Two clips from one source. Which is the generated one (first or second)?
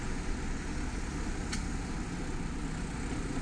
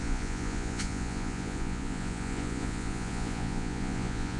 second